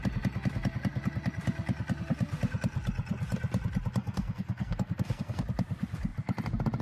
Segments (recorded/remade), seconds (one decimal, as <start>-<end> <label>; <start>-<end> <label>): 0.0-4.0 recorded; 4.0-5.4 remade; 5.4-6.8 recorded